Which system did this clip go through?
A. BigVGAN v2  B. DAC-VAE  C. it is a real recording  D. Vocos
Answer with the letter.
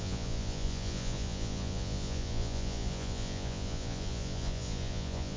D